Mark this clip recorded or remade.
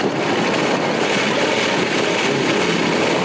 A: recorded